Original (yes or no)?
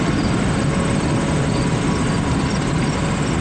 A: yes